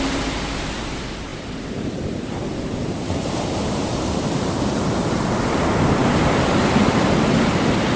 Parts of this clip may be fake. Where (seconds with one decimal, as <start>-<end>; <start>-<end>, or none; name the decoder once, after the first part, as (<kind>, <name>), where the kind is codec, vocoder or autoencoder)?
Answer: none